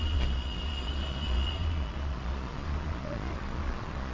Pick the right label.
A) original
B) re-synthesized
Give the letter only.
B